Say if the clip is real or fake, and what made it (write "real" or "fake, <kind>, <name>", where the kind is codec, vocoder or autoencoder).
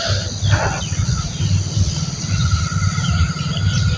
real